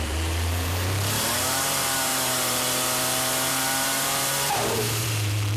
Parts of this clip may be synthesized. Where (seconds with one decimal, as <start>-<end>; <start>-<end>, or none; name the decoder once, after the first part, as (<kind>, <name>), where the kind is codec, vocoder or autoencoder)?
0.0-5.6 (vocoder, BigVGAN v2)